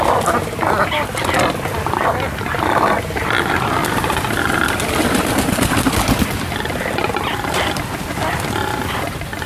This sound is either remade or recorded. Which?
recorded